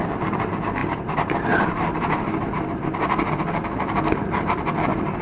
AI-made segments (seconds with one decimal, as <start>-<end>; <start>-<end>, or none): 0.8-3.3